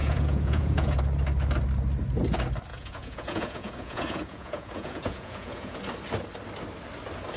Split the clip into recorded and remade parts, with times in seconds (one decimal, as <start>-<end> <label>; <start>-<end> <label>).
0.0-1.0 remade; 1.0-2.7 recorded; 2.7-5.8 remade; 5.8-7.4 recorded